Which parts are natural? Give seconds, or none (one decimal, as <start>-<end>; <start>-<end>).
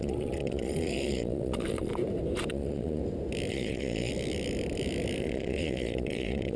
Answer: 1.9-2.5; 3.0-3.5; 4.1-5.2